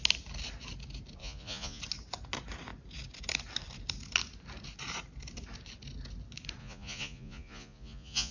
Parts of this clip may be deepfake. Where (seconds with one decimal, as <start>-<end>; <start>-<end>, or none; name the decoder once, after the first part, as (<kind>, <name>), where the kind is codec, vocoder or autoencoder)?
1.2-1.8 (vocoder, Vocos); 6.6-8.3